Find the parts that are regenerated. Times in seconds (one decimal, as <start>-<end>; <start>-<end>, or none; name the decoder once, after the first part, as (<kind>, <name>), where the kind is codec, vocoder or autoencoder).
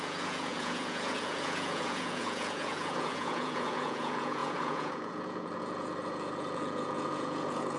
0.0-7.8 (vocoder, Vocos)